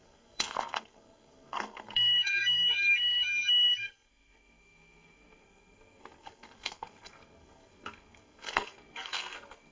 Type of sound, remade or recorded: remade